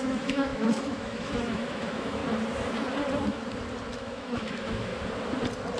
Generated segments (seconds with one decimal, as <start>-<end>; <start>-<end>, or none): 0.0-2.2; 3.9-4.9